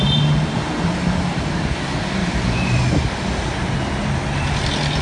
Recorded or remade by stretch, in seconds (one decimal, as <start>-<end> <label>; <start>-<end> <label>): 0.0-5.0 recorded